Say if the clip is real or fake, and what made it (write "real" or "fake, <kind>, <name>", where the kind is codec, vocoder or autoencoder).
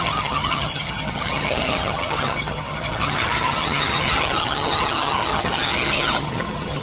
fake, vocoder, HiFi-GAN